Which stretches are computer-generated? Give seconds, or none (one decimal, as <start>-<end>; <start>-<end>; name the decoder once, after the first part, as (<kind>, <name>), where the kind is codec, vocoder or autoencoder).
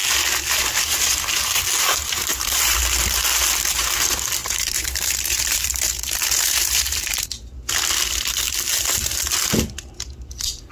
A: 2.0-2.8 (vocoder, BigVGAN v2); 4.4-7.3